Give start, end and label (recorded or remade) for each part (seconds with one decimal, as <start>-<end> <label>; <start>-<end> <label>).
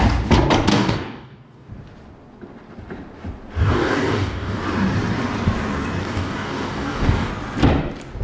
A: 0.0-0.7 recorded; 0.7-1.7 remade; 1.7-3.6 recorded; 3.6-4.6 remade; 4.6-6.0 recorded; 6.0-7.3 remade; 7.3-8.2 recorded